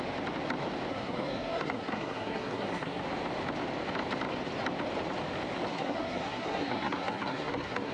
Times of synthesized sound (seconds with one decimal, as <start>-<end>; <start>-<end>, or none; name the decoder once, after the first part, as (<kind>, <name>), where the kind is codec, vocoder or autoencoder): 0.9-3.0 (codec, SNAC); 5.7-7.9